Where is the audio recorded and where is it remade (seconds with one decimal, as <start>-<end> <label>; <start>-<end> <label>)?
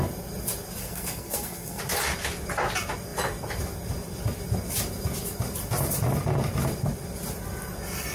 0.0-0.8 recorded; 0.8-1.8 remade; 1.8-8.1 recorded